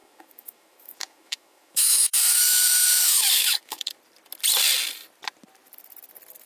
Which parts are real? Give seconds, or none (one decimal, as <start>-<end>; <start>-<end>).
3.9-6.5

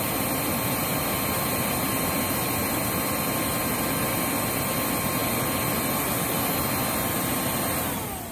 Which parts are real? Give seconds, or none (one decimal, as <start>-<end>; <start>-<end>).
0.0-8.3